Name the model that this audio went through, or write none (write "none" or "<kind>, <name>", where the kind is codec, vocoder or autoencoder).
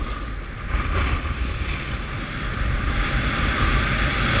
none